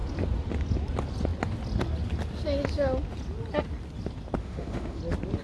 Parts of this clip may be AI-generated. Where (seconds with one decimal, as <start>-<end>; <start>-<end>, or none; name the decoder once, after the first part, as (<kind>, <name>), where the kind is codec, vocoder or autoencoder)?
4.4-5.0 (autoencoder, DAC-VAE)